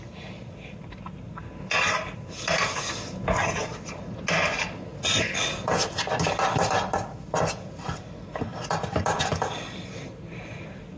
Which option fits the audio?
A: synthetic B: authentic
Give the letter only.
B